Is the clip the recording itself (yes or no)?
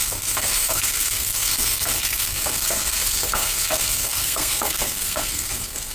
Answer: no